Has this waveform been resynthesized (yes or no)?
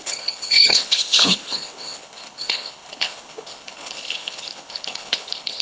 yes